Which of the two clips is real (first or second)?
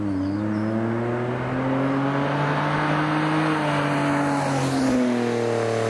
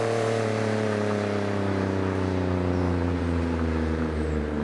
first